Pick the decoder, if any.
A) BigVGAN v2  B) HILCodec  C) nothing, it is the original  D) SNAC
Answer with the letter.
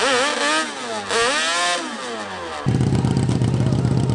C